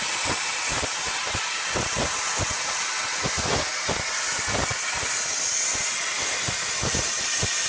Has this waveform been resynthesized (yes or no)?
no